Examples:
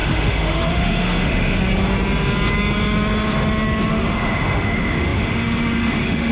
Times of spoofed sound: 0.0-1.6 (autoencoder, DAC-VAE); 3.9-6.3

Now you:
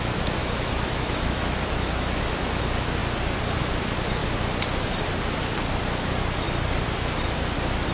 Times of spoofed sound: 0.4-2.6 (autoencoder, DAC-VAE)

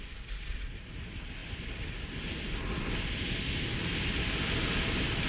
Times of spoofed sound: none

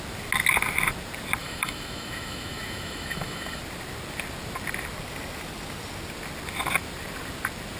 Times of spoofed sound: 1.4-3.6 (autoencoder, DAC-VAE)